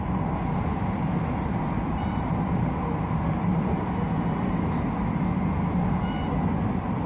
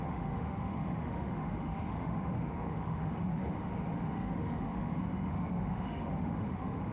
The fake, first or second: second